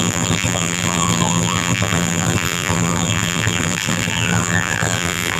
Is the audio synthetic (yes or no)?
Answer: yes